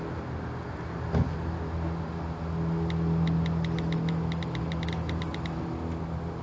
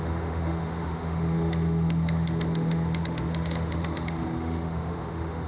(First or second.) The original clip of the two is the first